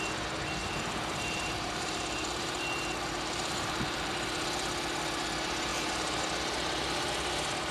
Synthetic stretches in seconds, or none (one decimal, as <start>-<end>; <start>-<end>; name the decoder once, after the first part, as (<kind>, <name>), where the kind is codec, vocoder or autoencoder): 0.6-4.1 (vocoder, BigVGAN v2); 5.7-6.2